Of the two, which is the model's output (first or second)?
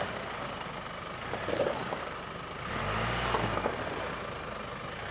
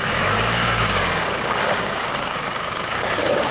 second